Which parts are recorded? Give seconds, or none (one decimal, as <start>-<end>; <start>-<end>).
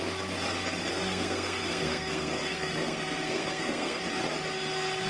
0.0-0.9; 4.0-5.1